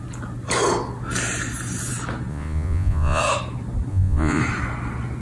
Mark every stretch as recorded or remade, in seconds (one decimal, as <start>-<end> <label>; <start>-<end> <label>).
0.0-2.3 recorded; 2.3-3.2 remade; 3.2-3.9 recorded; 3.9-4.4 remade; 4.4-5.2 recorded